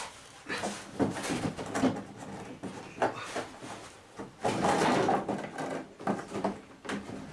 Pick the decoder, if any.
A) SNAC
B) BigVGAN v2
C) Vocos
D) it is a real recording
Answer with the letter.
D